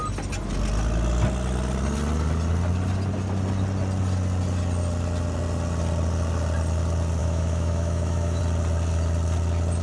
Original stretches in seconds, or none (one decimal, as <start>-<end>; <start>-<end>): 0.0-7.2; 8.4-9.8

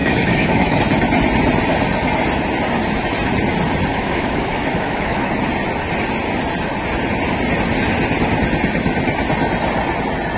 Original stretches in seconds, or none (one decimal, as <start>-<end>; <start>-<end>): 0.8-3.9; 5.3-10.4

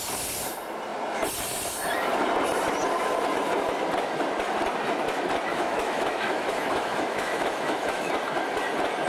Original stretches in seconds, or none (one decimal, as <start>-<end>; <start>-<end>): 0.0-5.5; 8.1-9.1

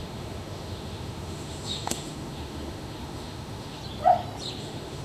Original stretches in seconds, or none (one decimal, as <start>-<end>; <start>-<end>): 3.8-4.6

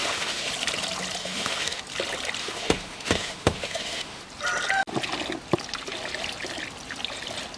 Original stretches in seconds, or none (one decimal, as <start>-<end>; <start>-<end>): 0.5-1.2; 1.8-2.4; 4.2-7.6